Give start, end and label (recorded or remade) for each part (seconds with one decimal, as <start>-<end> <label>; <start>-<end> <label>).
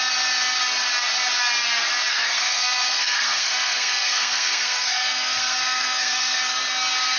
0.0-2.1 recorded; 2.1-6.4 remade; 6.4-7.2 recorded